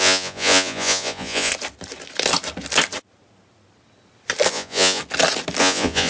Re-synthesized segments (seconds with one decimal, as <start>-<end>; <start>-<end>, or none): 0.0-1.5; 4.5-5.0; 5.6-6.1